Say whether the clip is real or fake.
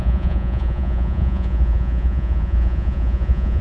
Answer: fake